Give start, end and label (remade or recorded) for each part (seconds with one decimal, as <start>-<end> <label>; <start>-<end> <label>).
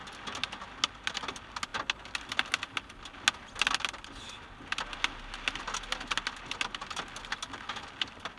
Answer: 0.0-8.4 recorded